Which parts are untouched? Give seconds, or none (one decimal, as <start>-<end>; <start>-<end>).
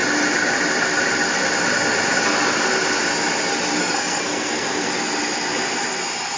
0.0-3.8; 4.9-6.4